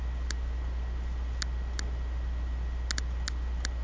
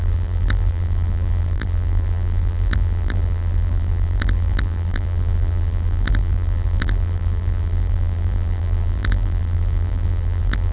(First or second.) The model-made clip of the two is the second